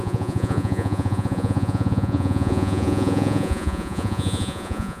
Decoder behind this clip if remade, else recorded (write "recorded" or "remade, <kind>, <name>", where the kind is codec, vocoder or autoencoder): remade, vocoder, Vocos